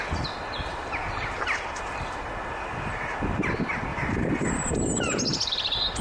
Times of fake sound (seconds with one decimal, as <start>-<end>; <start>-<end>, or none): 0.6-3.2; 3.9-4.5